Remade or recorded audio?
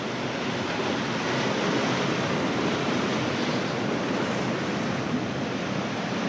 recorded